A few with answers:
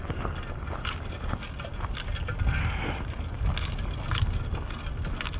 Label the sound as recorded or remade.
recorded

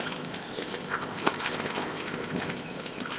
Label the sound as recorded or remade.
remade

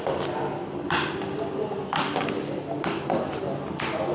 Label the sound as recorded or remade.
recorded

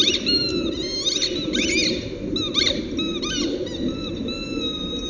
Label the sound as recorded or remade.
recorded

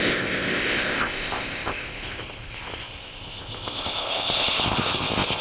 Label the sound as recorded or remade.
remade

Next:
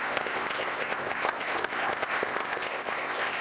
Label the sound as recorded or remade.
remade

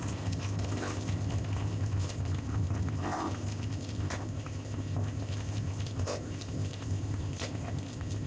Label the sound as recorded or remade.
remade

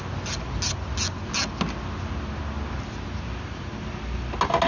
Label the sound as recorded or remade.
recorded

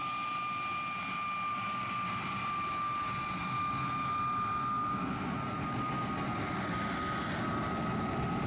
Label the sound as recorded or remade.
recorded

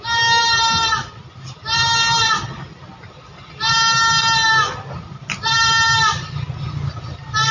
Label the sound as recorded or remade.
recorded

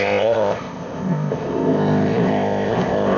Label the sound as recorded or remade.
remade